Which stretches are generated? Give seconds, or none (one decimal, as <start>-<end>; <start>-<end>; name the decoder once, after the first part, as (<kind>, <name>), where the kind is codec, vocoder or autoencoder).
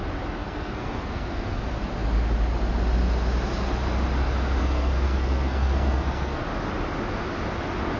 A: 0.4-1.6 (codec, SNAC); 4.6-6.4